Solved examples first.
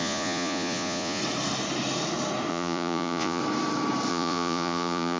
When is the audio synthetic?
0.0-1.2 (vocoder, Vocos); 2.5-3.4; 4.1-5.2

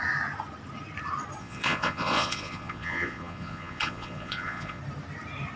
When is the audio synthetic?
1.4-4.8 (vocoder, Vocos)

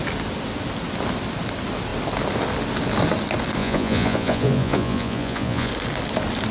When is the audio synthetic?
3.6-5.7 (vocoder, Vocos)

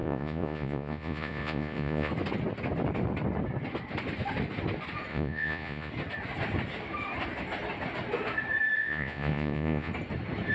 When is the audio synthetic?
0.0-2.1 (vocoder, Vocos); 5.1-5.9; 8.8-9.9